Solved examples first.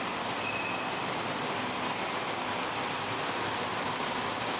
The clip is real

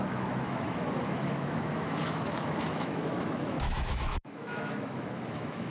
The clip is fake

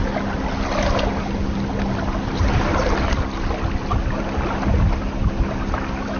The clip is real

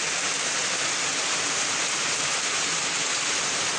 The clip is real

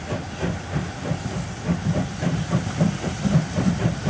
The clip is real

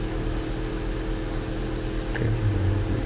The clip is real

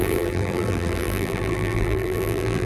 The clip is fake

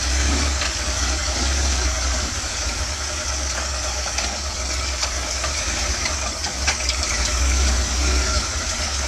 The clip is fake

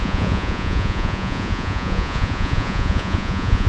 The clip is fake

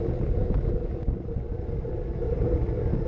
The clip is real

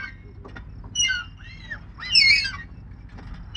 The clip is real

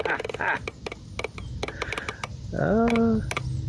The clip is real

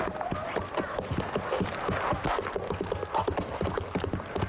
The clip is real